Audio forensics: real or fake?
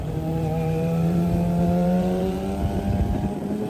fake